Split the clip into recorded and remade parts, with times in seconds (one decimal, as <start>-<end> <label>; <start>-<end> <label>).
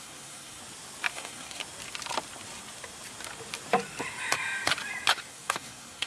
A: 0.0-0.6 remade; 0.6-1.1 recorded; 1.1-1.6 remade; 1.6-5.3 recorded; 5.3-6.1 remade